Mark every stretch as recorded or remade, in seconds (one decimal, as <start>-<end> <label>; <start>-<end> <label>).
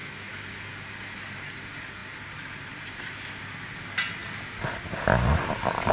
0.0-0.6 remade; 0.6-5.9 recorded